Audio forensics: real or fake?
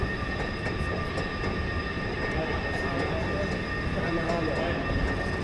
real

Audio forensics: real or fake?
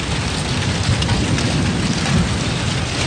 real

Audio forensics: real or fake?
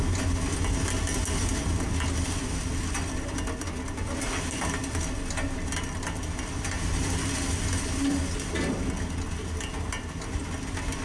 real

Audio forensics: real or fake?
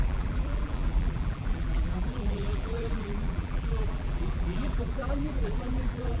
fake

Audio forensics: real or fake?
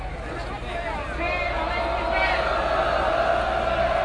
real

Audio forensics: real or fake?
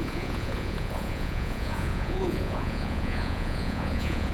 fake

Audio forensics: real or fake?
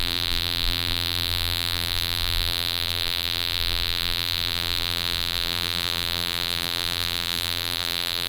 fake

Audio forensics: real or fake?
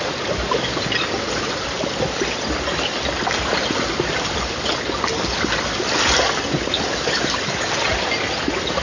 real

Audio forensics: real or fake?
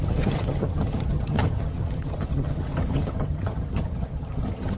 fake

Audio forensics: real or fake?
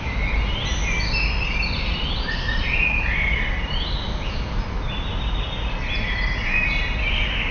real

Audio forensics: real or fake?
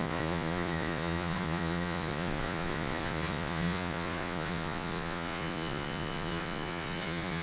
fake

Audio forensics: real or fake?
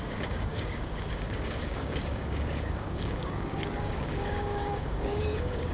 fake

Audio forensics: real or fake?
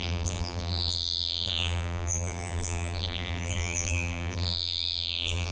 fake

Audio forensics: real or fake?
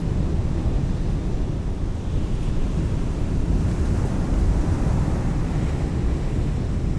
real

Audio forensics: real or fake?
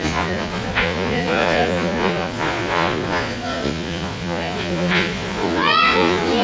fake